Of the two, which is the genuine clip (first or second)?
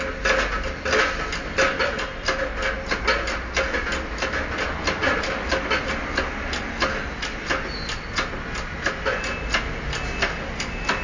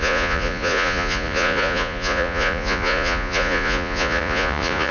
first